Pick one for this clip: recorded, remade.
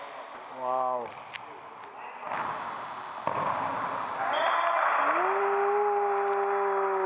recorded